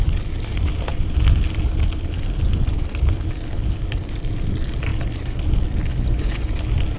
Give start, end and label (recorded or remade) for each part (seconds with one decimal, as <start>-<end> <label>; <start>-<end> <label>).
0.0-5.9 recorded; 5.9-6.5 remade; 6.5-7.0 recorded